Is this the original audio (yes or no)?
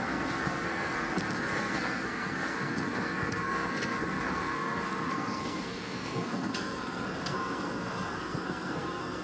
no